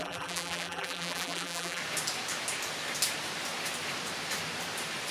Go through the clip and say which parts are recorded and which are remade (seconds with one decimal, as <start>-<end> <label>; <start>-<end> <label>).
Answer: 0.0-1.8 remade; 1.8-5.1 recorded